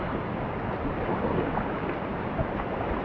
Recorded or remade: recorded